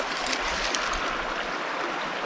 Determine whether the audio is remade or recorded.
recorded